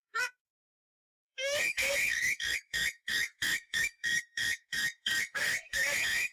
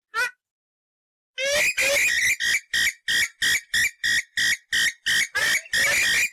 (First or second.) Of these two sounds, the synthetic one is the first